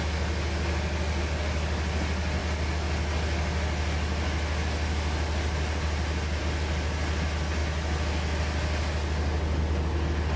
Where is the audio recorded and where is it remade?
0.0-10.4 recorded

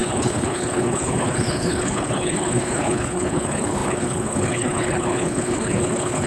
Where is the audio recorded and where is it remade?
0.0-6.3 remade

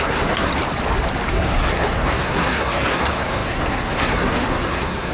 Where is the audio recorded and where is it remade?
0.0-0.5 remade; 0.5-1.3 recorded; 1.3-5.1 remade

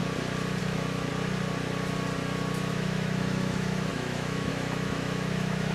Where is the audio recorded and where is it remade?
0.0-0.6 recorded; 0.6-1.1 remade; 1.1-2.7 recorded; 2.7-5.7 remade